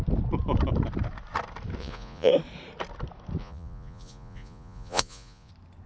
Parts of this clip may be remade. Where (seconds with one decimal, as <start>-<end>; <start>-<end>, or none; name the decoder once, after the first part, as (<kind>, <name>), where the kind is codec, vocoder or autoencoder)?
1.8-2.3 (vocoder, Vocos); 3.4-5.5